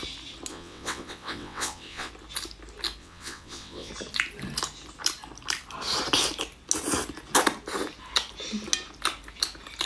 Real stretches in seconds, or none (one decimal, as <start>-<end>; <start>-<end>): 0.0-0.5; 2.1-3.0; 3.9-9.9